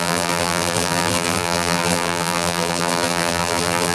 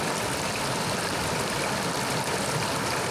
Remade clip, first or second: first